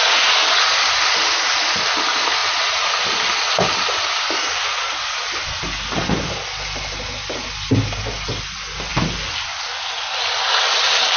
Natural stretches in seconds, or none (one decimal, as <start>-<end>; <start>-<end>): 0.0-11.2

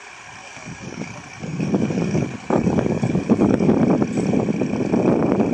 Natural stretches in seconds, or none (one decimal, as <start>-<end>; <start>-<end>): 0.0-0.4; 3.7-5.5

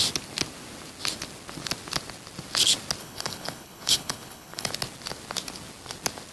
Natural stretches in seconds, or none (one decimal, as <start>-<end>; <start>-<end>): 0.0-3.0; 4.7-6.3

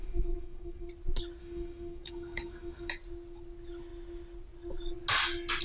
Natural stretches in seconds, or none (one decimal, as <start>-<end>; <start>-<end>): 0.9-1.4; 2.9-5.6

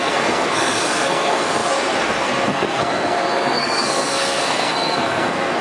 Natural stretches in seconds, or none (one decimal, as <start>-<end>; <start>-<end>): none

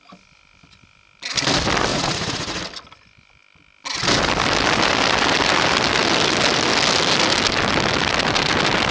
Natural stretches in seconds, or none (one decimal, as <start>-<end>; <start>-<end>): 0.0-1.9; 2.6-8.9